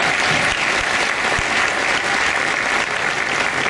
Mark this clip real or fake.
real